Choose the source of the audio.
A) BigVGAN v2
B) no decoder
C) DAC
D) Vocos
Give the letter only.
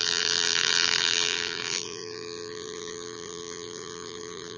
A